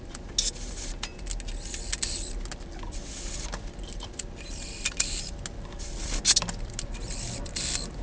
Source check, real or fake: real